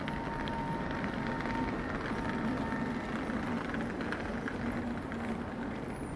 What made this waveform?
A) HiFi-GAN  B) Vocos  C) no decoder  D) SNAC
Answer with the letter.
C